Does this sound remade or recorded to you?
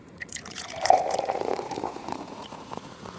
remade